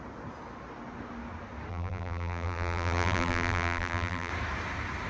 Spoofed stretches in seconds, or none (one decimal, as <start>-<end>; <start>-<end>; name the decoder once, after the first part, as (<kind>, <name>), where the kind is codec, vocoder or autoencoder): 1.7-4.3 (vocoder, BigVGAN v2)

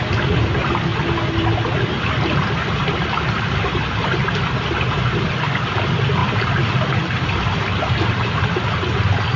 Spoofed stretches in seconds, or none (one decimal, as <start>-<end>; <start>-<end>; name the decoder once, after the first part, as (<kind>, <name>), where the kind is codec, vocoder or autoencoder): none

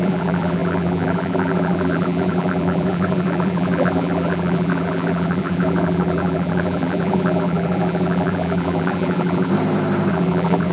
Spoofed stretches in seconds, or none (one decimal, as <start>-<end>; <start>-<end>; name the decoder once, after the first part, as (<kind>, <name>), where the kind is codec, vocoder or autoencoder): 0.0-9.5 (vocoder, BigVGAN v2); 10.1-10.7

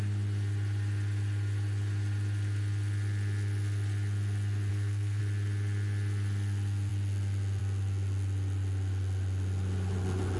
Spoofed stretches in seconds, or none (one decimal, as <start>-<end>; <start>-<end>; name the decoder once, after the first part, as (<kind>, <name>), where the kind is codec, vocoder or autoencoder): 4.7-5.2 (codec, SNAC)

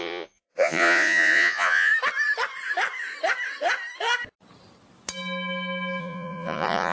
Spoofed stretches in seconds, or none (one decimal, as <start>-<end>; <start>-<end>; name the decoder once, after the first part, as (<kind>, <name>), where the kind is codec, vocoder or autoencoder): 0.0-1.9 (vocoder, Vocos); 6.0-6.9

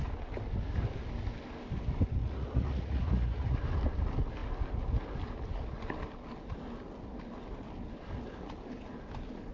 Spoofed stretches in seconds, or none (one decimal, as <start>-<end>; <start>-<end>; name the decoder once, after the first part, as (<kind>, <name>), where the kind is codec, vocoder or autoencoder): 2.2-3.6 (vocoder, Vocos)

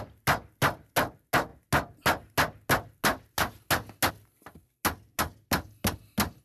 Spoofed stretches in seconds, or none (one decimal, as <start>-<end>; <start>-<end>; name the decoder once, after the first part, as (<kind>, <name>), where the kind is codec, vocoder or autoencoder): none

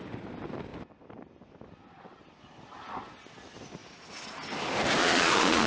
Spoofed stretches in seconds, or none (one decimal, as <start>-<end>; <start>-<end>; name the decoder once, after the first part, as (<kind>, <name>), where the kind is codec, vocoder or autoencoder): 5.0-5.7 (vocoder, Vocos)